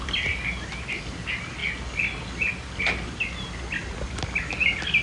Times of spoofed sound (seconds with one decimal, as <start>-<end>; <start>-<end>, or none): none